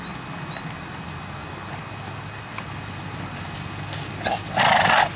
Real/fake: real